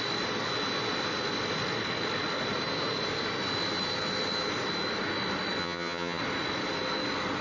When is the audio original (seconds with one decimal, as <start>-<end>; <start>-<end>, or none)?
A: 0.0-5.6; 6.2-7.4